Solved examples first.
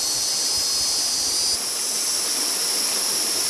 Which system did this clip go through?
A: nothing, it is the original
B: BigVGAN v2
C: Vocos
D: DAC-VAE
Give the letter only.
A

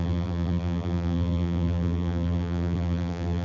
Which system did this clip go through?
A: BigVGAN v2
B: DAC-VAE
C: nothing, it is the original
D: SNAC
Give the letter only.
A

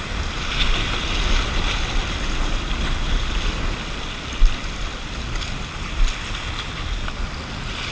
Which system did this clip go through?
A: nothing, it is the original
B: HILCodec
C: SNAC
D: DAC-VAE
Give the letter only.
A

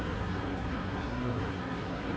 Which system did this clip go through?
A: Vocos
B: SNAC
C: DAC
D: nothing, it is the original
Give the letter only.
B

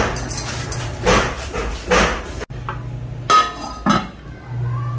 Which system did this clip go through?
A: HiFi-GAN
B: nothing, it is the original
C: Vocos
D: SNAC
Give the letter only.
B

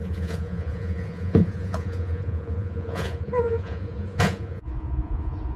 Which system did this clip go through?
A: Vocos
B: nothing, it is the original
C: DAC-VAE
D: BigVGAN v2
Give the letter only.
A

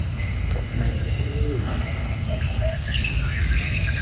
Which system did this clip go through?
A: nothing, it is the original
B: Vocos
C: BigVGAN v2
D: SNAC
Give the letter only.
D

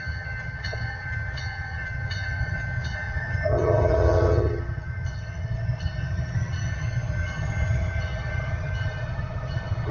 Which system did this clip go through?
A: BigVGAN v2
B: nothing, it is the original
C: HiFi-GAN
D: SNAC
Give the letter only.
C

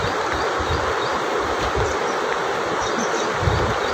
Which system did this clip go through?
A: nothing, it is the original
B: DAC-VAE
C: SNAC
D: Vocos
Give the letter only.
A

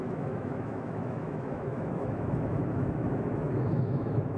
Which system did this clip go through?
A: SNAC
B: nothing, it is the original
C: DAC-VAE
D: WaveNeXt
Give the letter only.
C